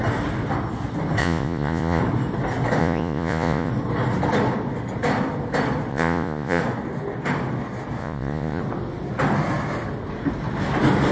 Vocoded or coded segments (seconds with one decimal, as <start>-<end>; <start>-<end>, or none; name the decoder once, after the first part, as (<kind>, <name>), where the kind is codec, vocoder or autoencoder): 1.2-2.0 (vocoder, Vocos); 2.8-3.7; 5.9-6.6; 8.0-8.6